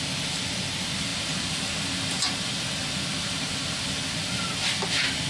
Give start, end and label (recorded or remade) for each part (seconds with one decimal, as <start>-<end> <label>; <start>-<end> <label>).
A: 0.0-5.3 recorded